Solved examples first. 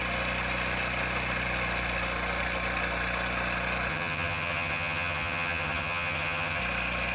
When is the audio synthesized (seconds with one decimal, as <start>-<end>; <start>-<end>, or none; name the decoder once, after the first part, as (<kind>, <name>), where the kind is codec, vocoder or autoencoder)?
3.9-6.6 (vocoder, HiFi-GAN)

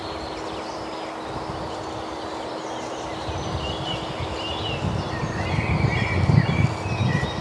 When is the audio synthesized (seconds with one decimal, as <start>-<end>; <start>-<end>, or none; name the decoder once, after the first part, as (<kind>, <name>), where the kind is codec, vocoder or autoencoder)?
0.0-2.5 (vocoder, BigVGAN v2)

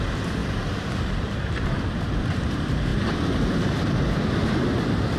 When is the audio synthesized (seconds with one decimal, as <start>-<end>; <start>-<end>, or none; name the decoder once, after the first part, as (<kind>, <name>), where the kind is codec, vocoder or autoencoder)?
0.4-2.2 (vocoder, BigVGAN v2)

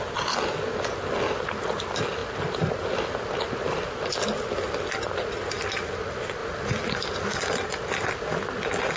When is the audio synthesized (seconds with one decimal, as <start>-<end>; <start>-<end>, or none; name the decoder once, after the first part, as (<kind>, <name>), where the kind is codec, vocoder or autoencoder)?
none

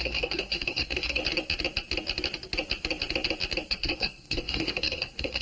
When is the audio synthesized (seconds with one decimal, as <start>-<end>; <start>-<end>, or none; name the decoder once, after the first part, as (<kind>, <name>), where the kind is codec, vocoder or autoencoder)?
0.0-1.2 (codec, SNAC); 3.7-5.4

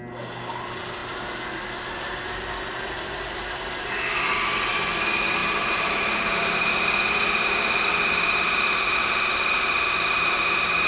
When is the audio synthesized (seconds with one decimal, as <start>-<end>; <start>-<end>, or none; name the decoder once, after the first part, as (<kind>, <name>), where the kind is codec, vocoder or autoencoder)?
5.4-6.7 (vocoder, BigVGAN v2)